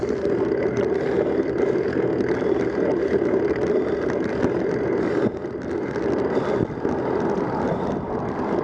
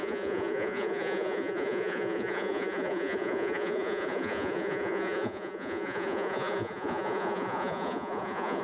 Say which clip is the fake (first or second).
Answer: second